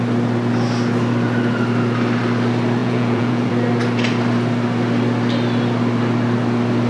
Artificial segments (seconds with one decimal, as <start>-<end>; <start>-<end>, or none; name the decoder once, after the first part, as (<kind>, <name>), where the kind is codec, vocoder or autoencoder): 2.8-3.5 (vocoder, Vocos)